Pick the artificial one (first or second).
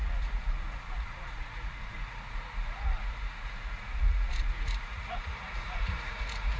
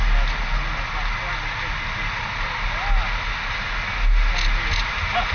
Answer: first